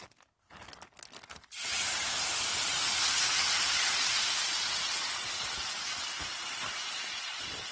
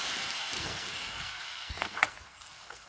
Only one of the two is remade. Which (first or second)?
second